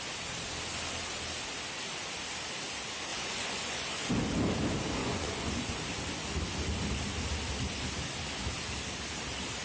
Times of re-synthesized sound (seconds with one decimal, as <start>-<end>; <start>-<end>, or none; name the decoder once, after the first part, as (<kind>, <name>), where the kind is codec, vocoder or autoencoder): 3.1-4.1 (vocoder, Vocos); 5.0-5.8